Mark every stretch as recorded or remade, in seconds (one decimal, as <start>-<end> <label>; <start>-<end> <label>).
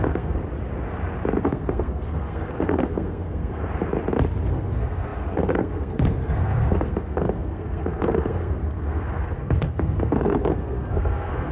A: 0.0-0.4 remade; 0.4-1.4 recorded; 1.4-3.6 remade; 3.6-4.5 recorded; 4.5-11.5 remade